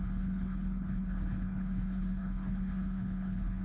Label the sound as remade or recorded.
remade